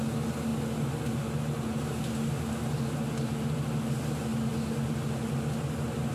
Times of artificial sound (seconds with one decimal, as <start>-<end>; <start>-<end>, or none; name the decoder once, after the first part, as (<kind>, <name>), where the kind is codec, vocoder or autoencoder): none